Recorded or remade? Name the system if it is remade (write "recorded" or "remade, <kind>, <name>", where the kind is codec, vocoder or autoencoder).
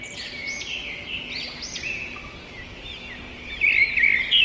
recorded